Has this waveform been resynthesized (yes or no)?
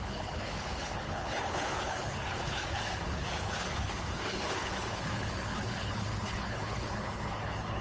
yes